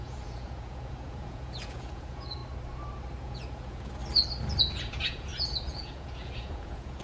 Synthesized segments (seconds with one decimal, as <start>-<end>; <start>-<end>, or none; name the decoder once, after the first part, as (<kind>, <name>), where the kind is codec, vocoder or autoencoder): 0.0-2.4 (vocoder, Vocos); 3.2-4.0; 4.6-7.0